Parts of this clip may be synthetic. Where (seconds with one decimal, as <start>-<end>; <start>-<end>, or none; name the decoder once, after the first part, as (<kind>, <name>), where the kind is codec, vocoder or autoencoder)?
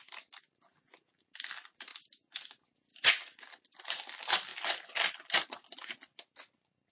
none